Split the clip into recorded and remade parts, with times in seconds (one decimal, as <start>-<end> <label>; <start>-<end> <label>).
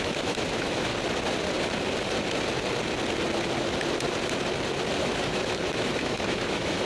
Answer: 0.0-0.9 remade; 0.9-5.0 recorded; 5.0-6.9 remade